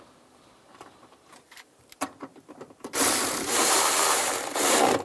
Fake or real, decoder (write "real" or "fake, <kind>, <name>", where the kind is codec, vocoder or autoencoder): fake, vocoder, BigVGAN v2